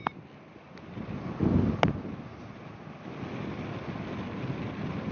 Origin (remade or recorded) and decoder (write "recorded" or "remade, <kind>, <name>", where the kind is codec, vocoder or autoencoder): recorded